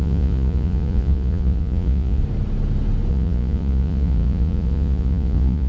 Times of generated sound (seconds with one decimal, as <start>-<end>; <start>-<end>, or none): 0.0-2.2; 3.1-5.7